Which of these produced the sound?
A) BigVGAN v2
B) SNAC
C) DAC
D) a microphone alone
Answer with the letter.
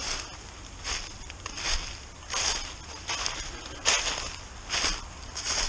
D